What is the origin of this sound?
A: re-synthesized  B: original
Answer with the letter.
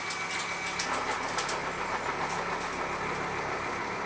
B